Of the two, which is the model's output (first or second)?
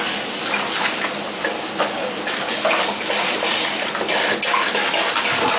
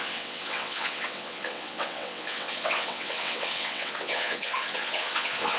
second